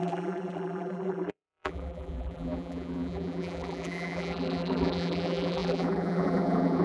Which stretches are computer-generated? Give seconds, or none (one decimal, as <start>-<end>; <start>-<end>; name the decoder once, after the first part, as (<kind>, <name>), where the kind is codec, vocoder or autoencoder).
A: 0.0-6.8 (vocoder, BigVGAN v2)